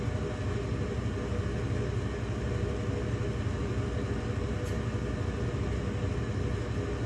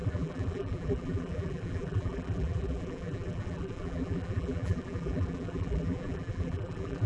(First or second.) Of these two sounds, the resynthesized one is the second